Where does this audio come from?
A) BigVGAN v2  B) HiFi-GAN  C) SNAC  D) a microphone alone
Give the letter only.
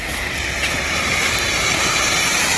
A